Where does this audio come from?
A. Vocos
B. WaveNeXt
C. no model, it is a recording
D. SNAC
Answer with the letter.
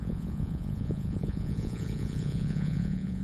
A